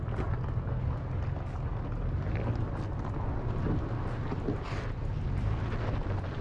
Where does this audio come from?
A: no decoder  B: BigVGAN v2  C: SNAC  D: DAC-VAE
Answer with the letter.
A